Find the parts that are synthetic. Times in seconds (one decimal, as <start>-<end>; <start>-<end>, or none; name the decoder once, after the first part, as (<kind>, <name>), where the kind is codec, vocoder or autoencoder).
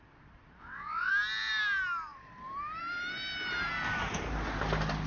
0.6-1.1 (vocoder, WaveNeXt)